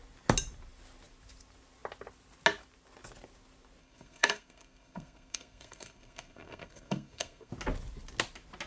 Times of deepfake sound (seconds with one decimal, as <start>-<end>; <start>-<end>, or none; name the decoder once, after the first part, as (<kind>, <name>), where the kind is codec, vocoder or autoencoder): 3.8-7.5 (codec, SNAC)